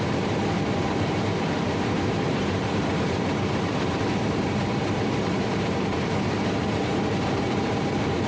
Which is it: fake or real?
fake